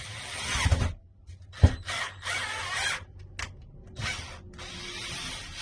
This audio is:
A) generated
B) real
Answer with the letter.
B